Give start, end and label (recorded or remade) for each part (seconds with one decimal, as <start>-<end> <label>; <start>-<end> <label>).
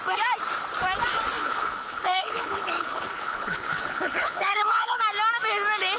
0.0-1.4 recorded; 1.4-5.0 remade; 5.0-6.0 recorded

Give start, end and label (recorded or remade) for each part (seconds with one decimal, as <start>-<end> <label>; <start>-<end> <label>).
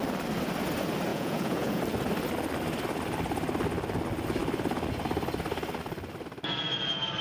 0.0-1.1 recorded; 1.1-1.8 remade; 1.8-7.2 recorded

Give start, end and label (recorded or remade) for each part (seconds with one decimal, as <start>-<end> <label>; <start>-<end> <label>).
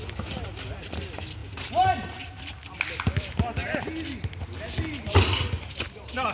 0.0-6.3 recorded